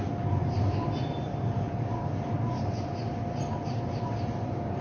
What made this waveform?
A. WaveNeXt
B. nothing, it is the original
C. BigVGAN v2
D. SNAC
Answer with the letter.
C